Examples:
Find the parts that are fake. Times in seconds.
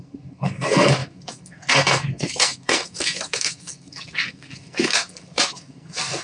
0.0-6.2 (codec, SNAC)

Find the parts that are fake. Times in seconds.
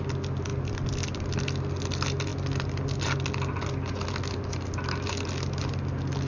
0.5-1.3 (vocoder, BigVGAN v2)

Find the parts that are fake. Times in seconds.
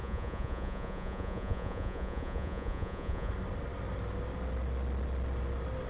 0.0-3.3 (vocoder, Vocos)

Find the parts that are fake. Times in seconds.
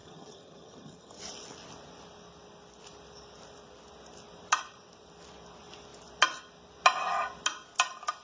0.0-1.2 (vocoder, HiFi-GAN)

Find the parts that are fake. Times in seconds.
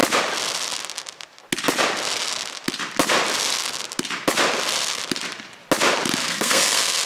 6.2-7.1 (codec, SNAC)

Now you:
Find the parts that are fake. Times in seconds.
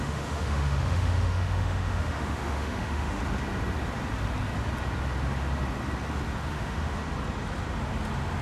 0.0-3.2 (autoencoder, DAC-VAE); 6.5-7.0